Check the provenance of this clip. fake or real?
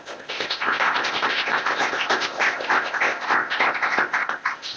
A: fake